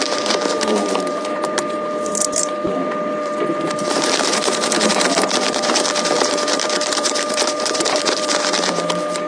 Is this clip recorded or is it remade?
remade